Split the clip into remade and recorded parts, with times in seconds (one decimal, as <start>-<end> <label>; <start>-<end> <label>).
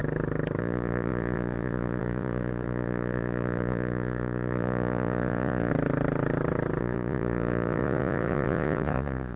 0.0-0.6 recorded; 0.6-5.7 remade; 5.7-6.8 recorded; 6.8-9.4 remade